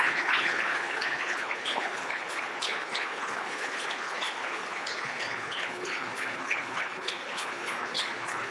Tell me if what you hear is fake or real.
fake